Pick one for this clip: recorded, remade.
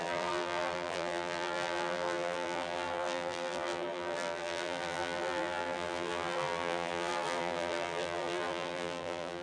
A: remade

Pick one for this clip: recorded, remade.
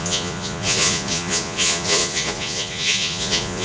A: remade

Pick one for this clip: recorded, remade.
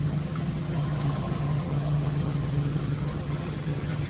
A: remade